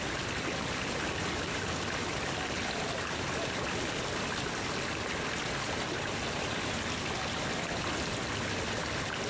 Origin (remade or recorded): recorded